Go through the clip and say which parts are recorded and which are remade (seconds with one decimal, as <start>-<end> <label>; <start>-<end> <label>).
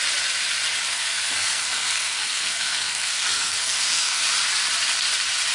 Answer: 0.0-0.9 recorded; 0.9-4.2 remade; 4.2-5.5 recorded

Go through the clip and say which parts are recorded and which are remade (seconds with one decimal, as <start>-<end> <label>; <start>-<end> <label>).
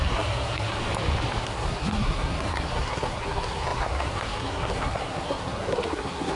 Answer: 0.0-0.8 remade; 0.8-1.4 recorded; 1.4-6.4 remade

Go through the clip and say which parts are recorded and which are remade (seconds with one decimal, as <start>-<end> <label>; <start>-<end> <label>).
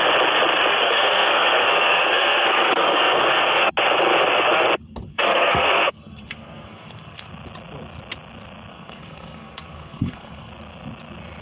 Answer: 0.0-0.8 recorded; 0.8-3.7 remade; 3.7-5.1 recorded; 5.1-7.3 remade; 7.3-8.7 recorded; 8.7-10.5 remade; 10.5-11.4 recorded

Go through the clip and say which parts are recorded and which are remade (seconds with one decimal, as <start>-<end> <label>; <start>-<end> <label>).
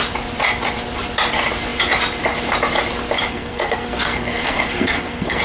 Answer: 0.0-3.3 recorded; 3.3-5.4 remade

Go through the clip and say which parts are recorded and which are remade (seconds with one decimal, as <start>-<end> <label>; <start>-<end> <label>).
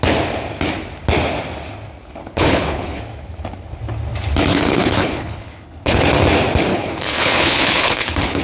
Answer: 0.0-2.2 recorded; 2.2-3.0 remade; 3.0-4.5 recorded; 4.5-6.0 remade; 6.0-6.7 recorded; 6.7-8.4 remade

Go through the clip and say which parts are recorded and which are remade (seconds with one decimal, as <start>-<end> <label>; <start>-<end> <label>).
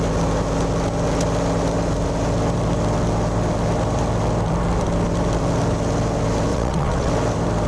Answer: 0.0-6.5 recorded; 6.5-7.1 remade; 7.1-7.7 recorded